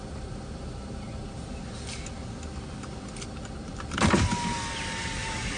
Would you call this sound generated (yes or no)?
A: no